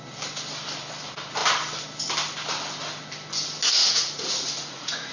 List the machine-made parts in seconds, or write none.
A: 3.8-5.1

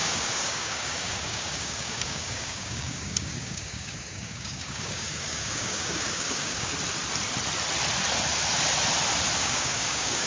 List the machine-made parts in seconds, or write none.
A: 0.0-6.7; 9.4-10.3

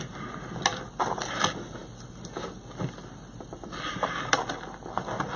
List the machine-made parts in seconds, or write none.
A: none

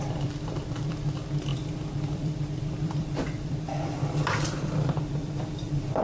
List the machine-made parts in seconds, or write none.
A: 0.0-6.0

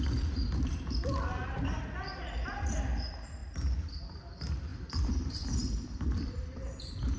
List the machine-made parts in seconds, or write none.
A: 0.0-7.2

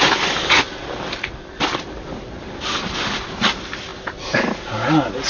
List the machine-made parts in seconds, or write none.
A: none